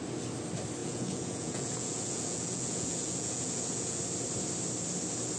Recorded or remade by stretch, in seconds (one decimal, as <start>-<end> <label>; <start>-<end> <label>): 0.0-0.8 recorded; 0.8-4.0 remade; 4.0-5.4 recorded